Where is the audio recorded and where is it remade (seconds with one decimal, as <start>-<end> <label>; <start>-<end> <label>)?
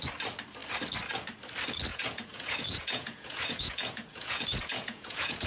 0.0-1.9 recorded; 1.9-5.5 remade